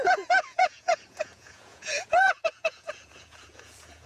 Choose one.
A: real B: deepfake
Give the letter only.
B